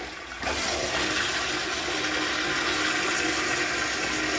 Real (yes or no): yes